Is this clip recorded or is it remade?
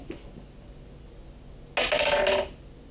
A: recorded